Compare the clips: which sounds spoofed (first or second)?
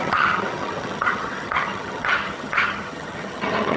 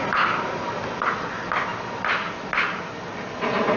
first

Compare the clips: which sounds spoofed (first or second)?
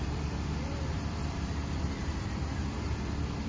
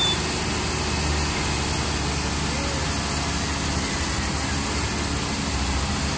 first